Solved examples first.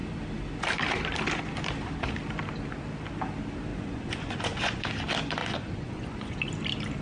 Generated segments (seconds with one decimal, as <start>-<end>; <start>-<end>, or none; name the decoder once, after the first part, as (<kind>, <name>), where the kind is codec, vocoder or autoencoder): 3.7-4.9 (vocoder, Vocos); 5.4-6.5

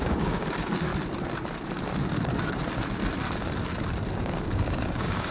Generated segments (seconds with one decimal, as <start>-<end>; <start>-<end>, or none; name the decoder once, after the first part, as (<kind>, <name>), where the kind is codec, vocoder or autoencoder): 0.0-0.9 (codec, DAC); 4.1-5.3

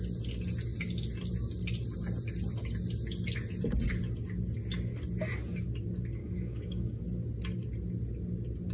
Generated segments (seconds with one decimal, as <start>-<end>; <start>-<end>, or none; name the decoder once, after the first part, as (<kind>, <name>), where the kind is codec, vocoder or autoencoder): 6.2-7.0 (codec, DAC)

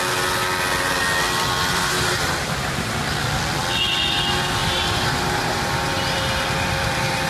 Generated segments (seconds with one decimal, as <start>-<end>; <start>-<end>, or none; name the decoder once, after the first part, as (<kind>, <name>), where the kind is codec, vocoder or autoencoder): 1.7-2.9 (vocoder, BigVGAN v2); 4.6-7.3

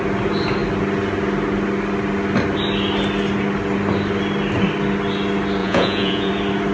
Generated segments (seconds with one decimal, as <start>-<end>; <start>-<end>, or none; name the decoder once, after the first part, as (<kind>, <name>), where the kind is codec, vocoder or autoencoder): 5.6-6.3 (vocoder, Vocos)